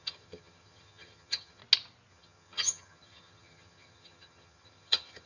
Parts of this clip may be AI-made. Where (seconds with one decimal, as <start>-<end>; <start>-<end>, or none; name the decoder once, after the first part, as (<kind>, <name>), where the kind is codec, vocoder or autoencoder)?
0.0-1.6 (vocoder, HiFi-GAN); 2.1-5.3